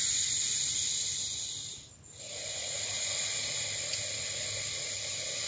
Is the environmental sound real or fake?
real